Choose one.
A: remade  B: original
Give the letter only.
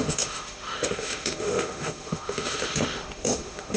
A